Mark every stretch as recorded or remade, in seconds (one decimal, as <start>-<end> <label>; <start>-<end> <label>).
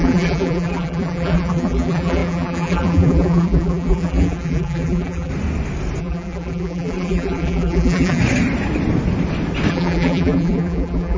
0.0-5.3 remade; 5.3-6.0 recorded; 6.0-8.2 remade; 8.2-9.7 recorded; 9.7-11.2 remade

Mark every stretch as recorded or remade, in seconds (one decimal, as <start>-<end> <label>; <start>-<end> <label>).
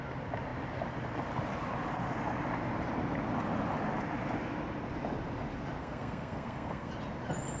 0.0-5.8 recorded; 5.8-6.9 remade; 6.9-7.6 recorded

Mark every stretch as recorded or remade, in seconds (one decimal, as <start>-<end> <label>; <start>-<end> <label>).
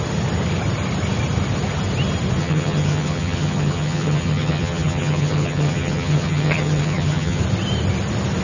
0.0-2.4 recorded; 2.4-7.4 remade; 7.4-8.4 recorded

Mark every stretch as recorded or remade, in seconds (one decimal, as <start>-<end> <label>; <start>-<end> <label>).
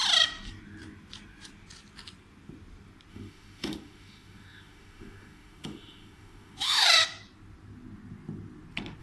0.0-3.1 recorded; 3.1-7.0 remade; 7.0-9.0 recorded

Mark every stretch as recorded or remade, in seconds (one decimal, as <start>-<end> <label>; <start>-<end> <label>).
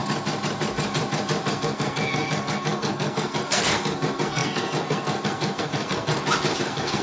0.0-1.5 recorded; 1.5-6.1 remade; 6.1-6.6 recorded; 6.6-7.0 remade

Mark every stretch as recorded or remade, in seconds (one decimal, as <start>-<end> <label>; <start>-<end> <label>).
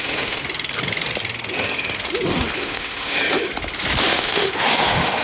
0.0-0.4 remade; 0.4-2.6 recorded; 2.6-3.2 remade; 3.2-4.0 recorded; 4.0-5.2 remade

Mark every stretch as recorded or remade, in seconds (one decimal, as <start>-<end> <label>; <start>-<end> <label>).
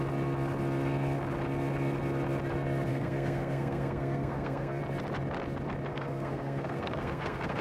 0.0-2.9 recorded; 2.9-4.8 remade; 4.8-5.9 recorded; 5.9-7.6 remade